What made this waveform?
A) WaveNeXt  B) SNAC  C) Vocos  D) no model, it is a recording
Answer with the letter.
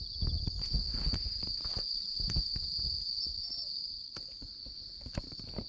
D